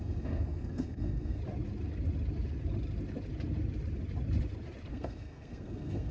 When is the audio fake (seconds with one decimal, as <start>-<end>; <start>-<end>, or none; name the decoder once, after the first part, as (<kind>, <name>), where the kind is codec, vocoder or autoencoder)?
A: 0.0-1.4 (codec, SNAC); 4.9-6.1